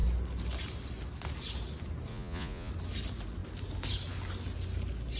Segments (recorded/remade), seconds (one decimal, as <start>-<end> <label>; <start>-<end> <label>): 0.0-2.1 recorded; 2.1-2.7 remade; 2.7-5.2 recorded